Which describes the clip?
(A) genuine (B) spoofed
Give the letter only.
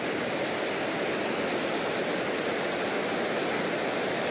A